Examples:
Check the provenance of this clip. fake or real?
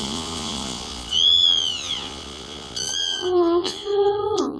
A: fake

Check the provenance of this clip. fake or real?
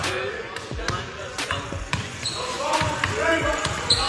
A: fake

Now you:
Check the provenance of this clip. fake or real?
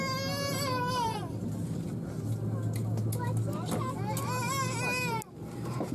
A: real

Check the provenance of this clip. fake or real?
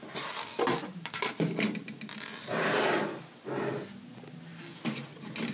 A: real